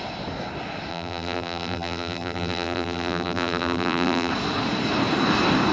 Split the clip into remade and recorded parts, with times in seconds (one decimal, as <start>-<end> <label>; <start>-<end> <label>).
0.0-0.9 recorded; 0.9-4.3 remade; 4.3-5.7 recorded